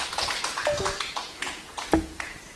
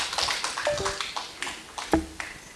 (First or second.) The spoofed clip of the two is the first